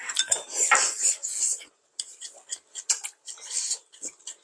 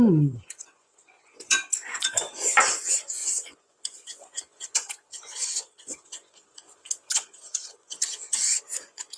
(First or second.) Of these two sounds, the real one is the first